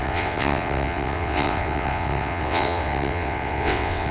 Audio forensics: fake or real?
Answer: fake